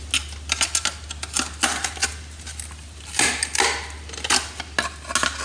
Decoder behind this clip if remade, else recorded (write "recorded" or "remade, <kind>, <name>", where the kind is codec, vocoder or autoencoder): recorded